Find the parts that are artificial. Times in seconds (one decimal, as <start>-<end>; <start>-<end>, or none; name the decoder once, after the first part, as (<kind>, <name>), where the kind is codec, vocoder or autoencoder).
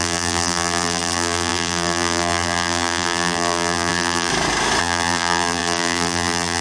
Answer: 0.0-4.3 (vocoder, BigVGAN v2); 4.8-6.6